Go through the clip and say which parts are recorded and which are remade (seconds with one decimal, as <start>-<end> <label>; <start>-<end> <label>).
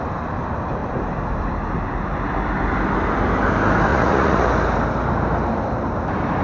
0.0-3.9 recorded; 3.9-4.5 remade; 4.5-6.4 recorded